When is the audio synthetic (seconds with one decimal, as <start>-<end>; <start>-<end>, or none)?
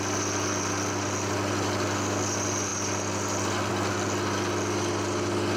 none